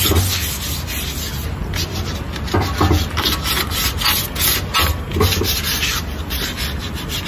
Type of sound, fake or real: real